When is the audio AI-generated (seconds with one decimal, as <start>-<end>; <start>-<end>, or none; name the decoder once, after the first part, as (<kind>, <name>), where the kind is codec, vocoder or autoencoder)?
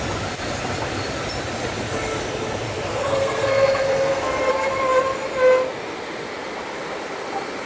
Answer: 2.9-4.5 (codec, SNAC)